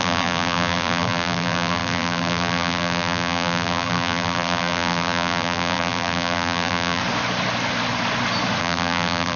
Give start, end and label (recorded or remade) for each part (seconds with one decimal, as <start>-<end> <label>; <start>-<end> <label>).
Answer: 0.0-7.0 remade; 7.0-8.6 recorded; 8.6-9.4 remade